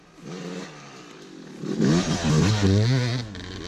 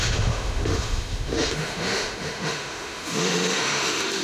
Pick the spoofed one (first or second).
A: second